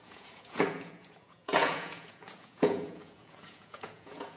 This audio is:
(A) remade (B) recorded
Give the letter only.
A